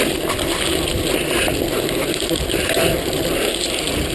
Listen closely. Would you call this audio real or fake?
real